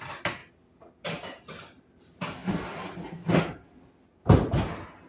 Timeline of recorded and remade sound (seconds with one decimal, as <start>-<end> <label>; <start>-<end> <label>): 0.0-5.1 recorded